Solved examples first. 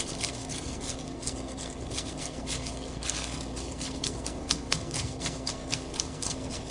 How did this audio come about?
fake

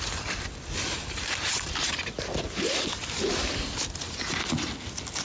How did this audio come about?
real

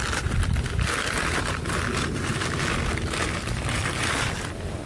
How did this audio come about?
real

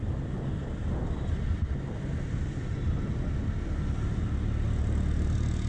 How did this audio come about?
real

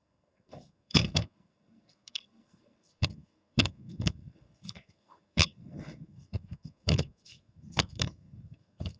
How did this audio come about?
fake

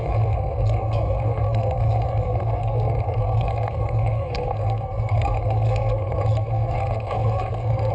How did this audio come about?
fake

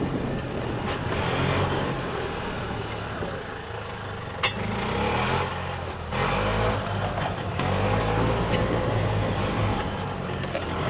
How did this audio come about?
real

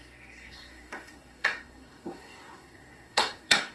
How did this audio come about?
fake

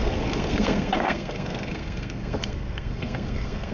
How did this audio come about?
fake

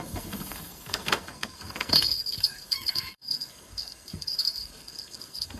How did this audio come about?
fake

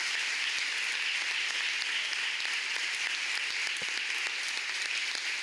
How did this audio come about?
real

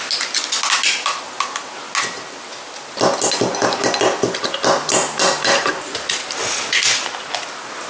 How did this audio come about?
real